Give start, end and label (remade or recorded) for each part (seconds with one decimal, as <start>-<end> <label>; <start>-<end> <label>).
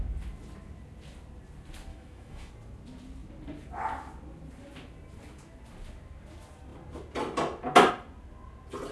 0.0-1.9 recorded; 1.9-2.5 remade; 2.5-8.9 recorded